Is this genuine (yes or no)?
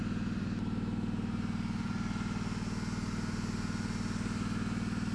yes